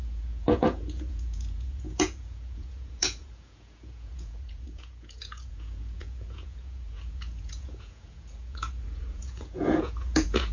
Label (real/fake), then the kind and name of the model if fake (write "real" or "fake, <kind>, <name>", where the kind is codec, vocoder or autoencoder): fake, vocoder, Vocos